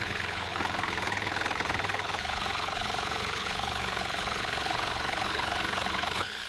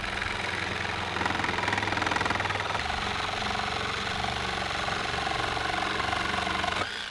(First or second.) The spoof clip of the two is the first